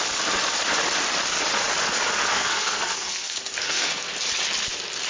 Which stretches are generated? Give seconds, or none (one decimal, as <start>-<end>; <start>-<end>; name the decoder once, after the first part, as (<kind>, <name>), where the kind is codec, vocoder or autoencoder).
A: 2.3-4.1 (codec, SNAC)